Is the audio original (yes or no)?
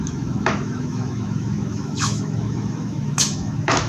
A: no